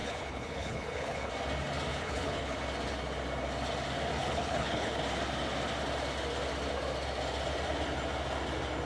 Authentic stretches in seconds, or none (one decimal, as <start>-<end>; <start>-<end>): 1.3-1.9; 2.6-4.2; 5.0-8.9

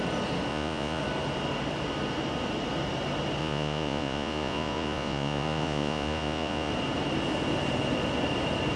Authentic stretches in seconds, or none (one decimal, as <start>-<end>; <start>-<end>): 0.0-0.5; 1.0-3.4; 6.7-8.8